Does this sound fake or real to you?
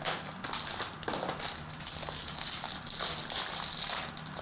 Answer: real